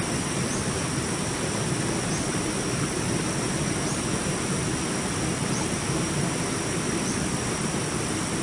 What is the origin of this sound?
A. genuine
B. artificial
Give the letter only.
A